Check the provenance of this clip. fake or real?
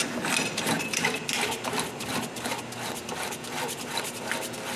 real